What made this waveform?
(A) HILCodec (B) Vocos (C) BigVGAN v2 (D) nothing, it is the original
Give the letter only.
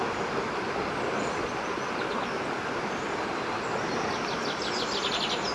D